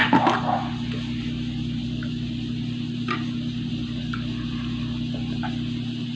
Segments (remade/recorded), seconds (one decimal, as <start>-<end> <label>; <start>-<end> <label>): 0.0-6.2 recorded